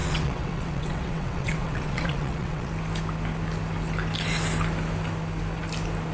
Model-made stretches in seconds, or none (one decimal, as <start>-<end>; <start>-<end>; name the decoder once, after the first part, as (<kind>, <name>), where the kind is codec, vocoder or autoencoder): 0.0-2.7 (vocoder, WaveNeXt)